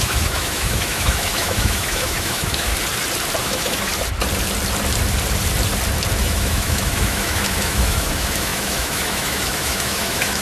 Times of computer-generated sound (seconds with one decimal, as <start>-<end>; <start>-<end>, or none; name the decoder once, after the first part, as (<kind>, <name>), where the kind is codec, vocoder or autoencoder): 0.0-2.7 (autoencoder, DAC-VAE); 3.4-3.9; 6.2-10.4